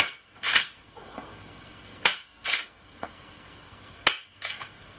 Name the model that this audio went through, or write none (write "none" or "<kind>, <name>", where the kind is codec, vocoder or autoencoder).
codec, SNAC